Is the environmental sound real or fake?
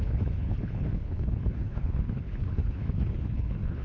fake